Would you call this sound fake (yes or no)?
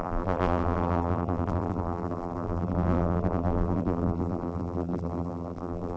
yes